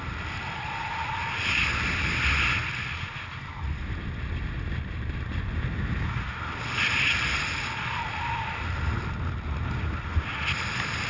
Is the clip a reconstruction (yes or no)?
no